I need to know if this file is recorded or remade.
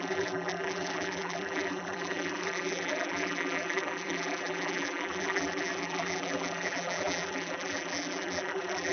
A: remade